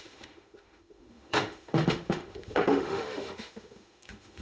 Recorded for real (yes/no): no